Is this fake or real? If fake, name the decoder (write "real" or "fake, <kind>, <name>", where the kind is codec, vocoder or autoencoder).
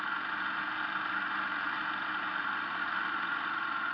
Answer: real